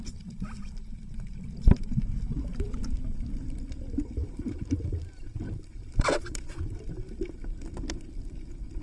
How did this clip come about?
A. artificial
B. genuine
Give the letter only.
A